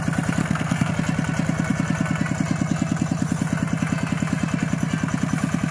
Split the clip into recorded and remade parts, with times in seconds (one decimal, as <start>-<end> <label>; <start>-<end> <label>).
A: 0.0-0.4 recorded; 0.4-0.9 remade; 0.9-5.7 recorded